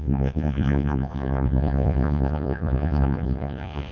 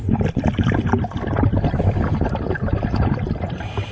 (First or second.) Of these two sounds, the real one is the second